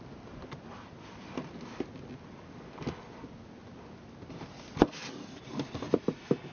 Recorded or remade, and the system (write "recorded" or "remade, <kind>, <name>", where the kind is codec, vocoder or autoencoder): recorded